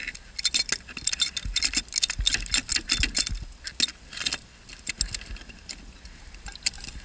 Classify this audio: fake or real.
real